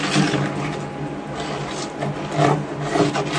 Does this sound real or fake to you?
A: real